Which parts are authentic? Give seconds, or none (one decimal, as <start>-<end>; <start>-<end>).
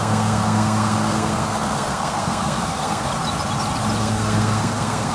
3.1-4.0